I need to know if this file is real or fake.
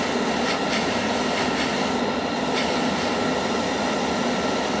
real